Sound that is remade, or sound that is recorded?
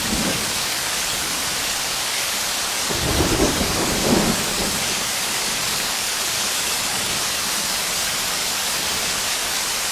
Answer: remade